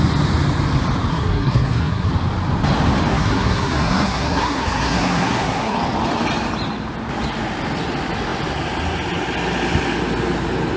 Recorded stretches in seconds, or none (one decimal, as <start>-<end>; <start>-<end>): 0.0-1.1; 2.1-3.1; 5.8-10.8